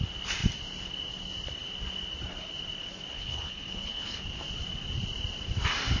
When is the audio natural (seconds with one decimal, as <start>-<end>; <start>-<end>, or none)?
0.0-3.1; 4.2-6.0